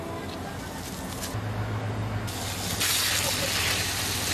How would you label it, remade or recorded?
recorded